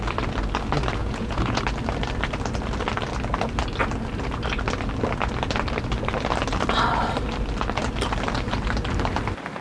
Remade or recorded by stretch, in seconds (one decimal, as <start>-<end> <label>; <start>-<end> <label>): 0.0-1.0 recorded; 1.0-1.6 remade; 1.6-9.6 recorded